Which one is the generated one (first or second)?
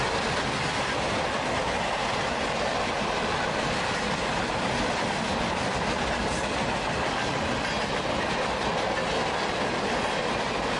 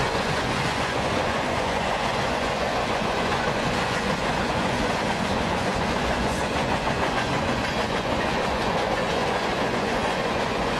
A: second